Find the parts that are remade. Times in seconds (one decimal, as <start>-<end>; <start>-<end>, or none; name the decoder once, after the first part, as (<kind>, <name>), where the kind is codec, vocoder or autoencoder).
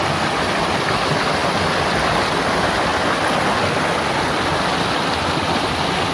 none